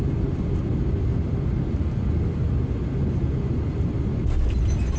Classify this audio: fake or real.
real